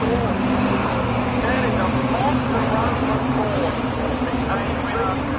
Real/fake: real